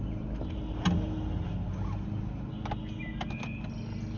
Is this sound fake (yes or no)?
no